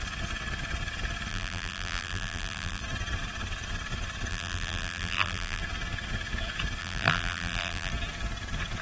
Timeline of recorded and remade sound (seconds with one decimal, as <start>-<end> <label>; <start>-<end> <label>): 0.0-1.3 recorded; 1.3-2.8 remade; 2.8-4.3 recorded; 4.3-5.6 remade; 5.6-6.8 recorded; 6.8-7.9 remade; 7.9-8.8 recorded